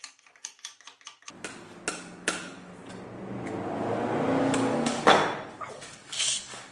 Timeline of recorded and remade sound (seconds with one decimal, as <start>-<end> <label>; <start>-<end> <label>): 0.0-0.7 remade; 0.7-1.9 recorded; 1.9-2.7 remade; 2.7-4.4 recorded; 4.4-5.2 remade; 5.2-5.7 recorded; 5.7-6.7 remade